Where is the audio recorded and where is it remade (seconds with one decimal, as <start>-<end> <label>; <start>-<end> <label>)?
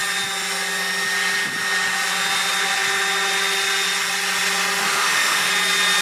0.0-4.8 recorded; 4.8-5.5 remade; 5.5-6.0 recorded